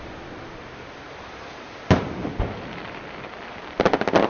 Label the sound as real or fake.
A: real